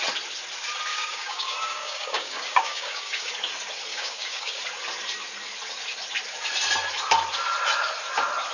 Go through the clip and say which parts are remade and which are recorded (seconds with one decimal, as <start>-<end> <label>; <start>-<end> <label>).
0.0-0.9 recorded; 0.9-3.3 remade; 3.3-3.9 recorded; 3.9-4.6 remade; 4.6-8.5 recorded